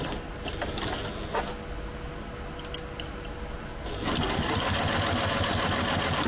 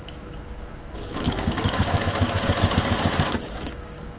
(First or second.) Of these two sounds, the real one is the first